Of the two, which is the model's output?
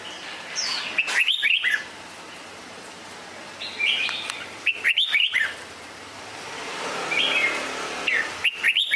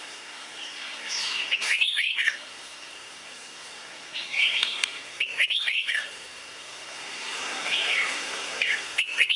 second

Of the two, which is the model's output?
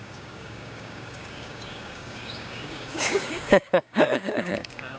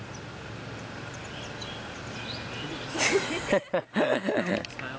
first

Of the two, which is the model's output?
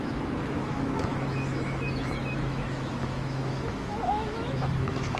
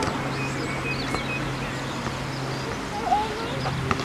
first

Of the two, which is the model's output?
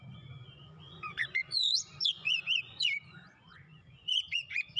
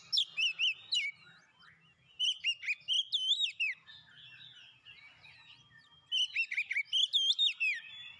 first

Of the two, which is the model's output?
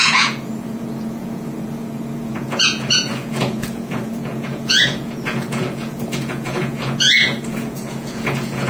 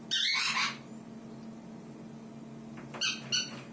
first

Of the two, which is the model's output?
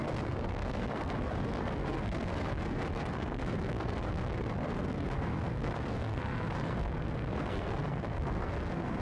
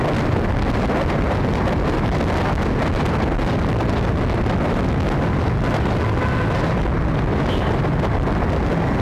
first